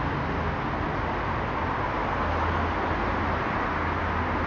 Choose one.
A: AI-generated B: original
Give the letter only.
B